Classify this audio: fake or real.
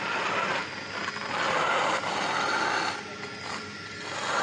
real